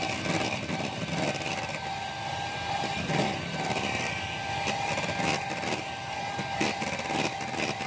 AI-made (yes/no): no